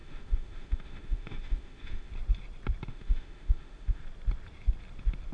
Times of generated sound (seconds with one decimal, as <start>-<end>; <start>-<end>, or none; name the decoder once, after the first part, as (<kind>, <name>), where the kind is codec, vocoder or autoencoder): 0.0-2.1 (autoencoder, DAC-VAE); 2.9-4.0